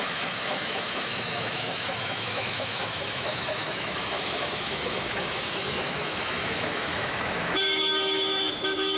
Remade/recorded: remade